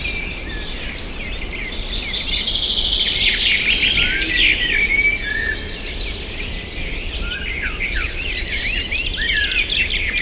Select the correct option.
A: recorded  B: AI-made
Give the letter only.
A